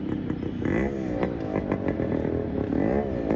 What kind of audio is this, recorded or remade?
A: recorded